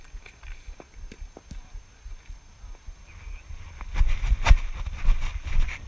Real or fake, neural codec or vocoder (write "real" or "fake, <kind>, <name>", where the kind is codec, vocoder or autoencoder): real